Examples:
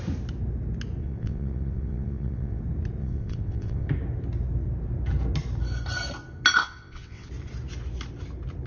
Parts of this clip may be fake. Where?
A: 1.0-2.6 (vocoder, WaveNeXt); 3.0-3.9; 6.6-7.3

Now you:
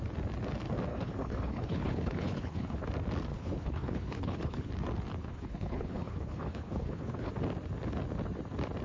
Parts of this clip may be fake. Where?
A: 0.9-2.8 (codec, HILCodec); 3.3-4.7; 5.2-7.3

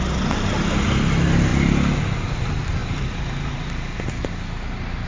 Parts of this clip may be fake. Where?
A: none

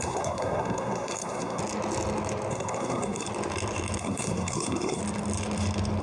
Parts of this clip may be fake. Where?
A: 0.0-1.6 (codec, SNAC); 2.5-3.3; 4.0-5.0

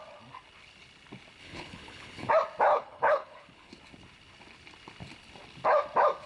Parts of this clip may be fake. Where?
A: 1.4-2.3 (codec, HILCodec); 2.7-3.7